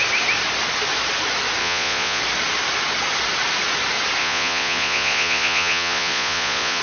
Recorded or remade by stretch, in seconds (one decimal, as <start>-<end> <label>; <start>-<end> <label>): 0.0-1.6 recorded; 1.6-2.2 remade; 2.2-4.2 recorded; 4.2-6.8 remade